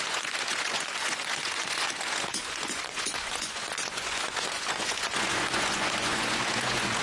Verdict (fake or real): fake